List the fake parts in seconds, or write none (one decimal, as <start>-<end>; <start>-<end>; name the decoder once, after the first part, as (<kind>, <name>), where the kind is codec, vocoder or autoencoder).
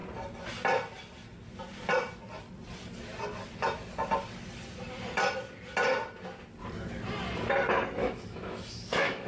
8.0-9.3 (autoencoder, DAC-VAE)